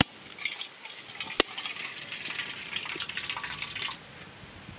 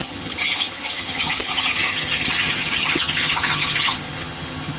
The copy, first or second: second